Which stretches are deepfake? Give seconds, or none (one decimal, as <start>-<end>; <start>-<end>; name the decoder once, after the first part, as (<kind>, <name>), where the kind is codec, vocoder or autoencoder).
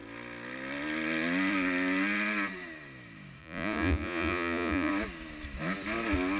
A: 3.4-4.9 (vocoder, Vocos)